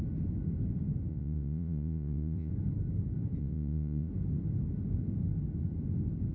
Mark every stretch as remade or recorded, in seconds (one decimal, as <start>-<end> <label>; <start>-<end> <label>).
0.0-1.1 recorded; 1.1-2.5 remade; 2.5-3.4 recorded; 3.4-4.1 remade; 4.1-6.3 recorded